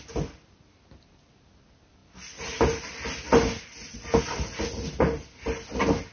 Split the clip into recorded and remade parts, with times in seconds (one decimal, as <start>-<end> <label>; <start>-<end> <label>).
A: 0.0-6.1 recorded